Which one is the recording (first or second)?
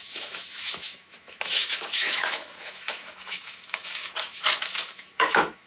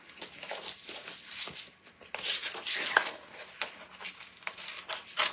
second